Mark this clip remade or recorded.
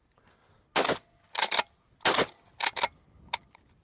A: recorded